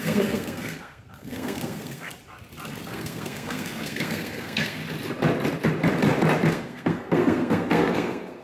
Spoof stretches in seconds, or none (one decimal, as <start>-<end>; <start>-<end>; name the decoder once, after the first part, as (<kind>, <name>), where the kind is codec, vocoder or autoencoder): 0.0-2.1 (codec, SNAC); 2.9-4.8; 6.5-8.4